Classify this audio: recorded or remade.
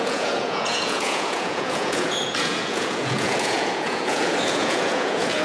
remade